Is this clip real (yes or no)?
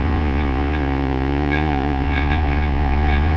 no